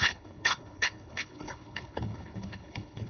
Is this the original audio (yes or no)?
no